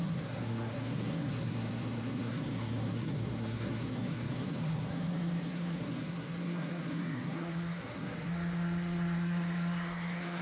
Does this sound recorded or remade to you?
remade